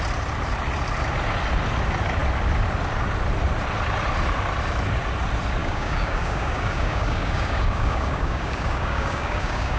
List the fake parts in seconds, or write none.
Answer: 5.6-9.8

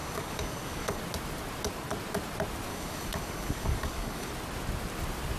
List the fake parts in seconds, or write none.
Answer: 0.0-1.0; 2.7-4.3

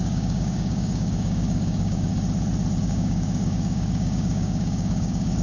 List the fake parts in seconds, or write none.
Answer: 0.0-2.1; 2.8-5.4

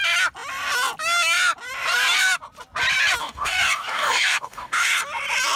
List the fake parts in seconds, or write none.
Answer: 3.2-5.0

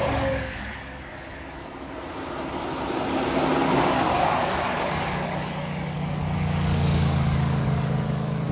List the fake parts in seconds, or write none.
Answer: 0.0-1.9; 3.6-8.5